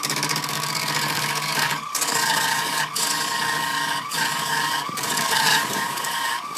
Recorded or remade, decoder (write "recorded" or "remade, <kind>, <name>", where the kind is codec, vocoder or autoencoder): remade, codec, DAC